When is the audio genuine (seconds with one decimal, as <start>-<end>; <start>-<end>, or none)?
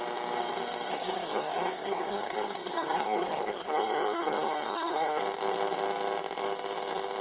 0.0-0.9; 5.2-7.2